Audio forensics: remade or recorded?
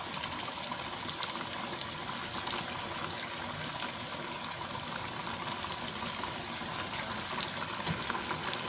recorded